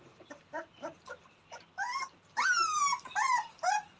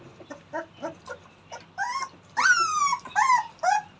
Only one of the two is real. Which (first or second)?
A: second